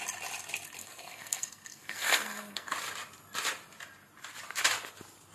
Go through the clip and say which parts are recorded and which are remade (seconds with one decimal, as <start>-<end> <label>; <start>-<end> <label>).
0.0-0.8 recorded; 0.8-2.7 remade; 2.7-5.3 recorded